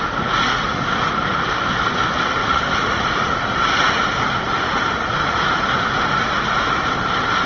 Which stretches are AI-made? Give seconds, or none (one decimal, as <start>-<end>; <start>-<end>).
0.0-1.3; 2.4-6.9